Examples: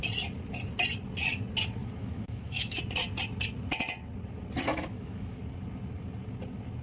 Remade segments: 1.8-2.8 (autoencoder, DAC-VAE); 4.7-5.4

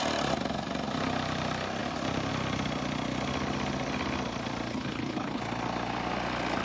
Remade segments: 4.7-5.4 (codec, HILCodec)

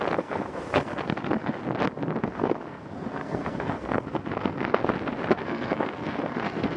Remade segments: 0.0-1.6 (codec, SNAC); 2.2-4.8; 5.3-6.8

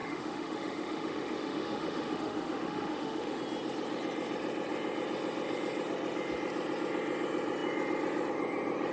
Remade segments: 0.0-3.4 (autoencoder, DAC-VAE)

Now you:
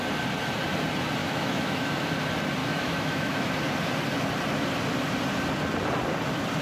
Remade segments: 1.2-2.1 (autoencoder, DAC-VAE); 2.6-3.5

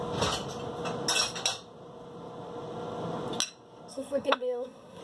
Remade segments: 3.9-5.0 (codec, SNAC)

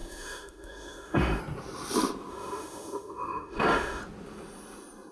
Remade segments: 0.0-1.4 (autoencoder, DAC-VAE); 2.3-4.0

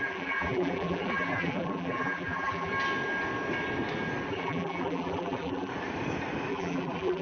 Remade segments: 0.0-2.7 (vocoder, BigVGAN v2); 4.3-5.7; 6.5-7.2